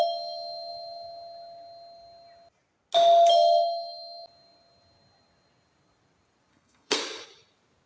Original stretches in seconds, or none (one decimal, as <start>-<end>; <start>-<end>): 0.0-6.5; 7.0-7.9